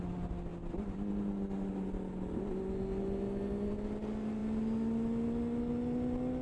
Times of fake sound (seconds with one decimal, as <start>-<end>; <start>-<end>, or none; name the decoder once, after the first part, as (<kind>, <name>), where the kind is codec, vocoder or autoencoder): none